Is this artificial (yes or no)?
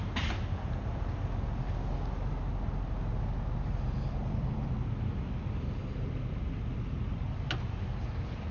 no